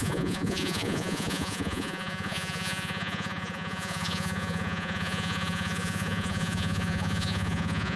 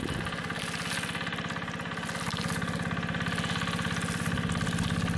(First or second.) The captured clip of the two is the second